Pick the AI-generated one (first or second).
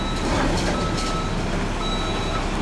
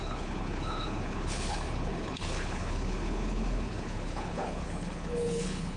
second